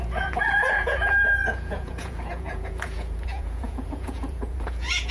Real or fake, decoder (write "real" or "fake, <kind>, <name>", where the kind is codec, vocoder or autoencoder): fake, vocoder, Vocos